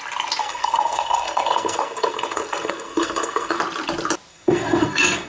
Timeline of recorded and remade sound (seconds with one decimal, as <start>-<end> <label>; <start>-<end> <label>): 0.0-0.4 recorded; 0.4-3.6 remade; 3.6-4.3 recorded; 4.3-5.3 remade